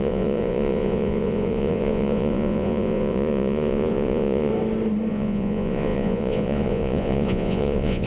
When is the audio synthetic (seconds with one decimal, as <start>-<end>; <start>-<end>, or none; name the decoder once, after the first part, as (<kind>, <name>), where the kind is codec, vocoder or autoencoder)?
0.0-4.5 (vocoder, Vocos); 5.1-8.1

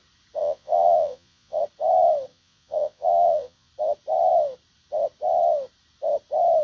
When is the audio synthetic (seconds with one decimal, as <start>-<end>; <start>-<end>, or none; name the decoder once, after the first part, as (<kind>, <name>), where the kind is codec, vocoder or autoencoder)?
0.4-1.6 (vocoder, Vocos); 2.3-3.7